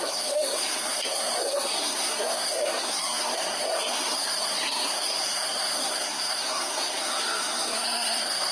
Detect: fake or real fake